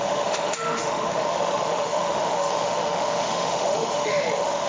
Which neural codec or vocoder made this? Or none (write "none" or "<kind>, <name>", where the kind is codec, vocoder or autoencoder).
autoencoder, DAC-VAE